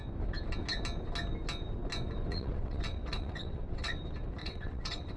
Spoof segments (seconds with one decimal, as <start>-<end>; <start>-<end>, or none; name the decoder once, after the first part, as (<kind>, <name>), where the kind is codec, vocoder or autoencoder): 2.3-4.0 (vocoder, WaveNeXt); 4.4-5.2